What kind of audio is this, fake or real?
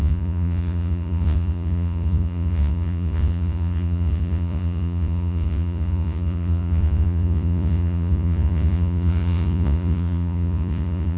fake